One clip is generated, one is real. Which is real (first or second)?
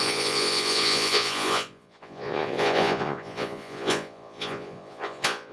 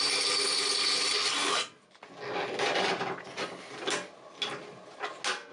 second